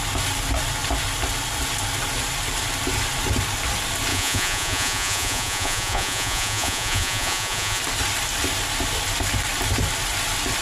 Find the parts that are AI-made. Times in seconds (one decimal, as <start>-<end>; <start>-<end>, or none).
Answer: 4.1-7.8